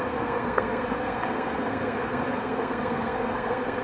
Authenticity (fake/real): fake